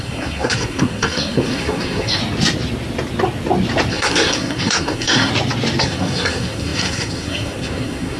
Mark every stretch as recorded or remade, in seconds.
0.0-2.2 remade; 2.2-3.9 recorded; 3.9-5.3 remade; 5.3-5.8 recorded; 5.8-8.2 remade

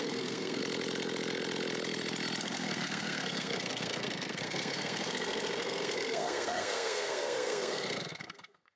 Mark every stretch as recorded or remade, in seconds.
0.0-0.6 remade; 0.6-2.4 recorded; 2.4-8.8 remade

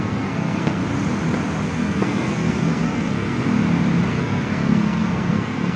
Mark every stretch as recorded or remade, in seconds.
0.0-0.8 remade; 0.8-1.7 recorded; 1.7-3.4 remade; 3.4-4.1 recorded; 4.1-5.8 remade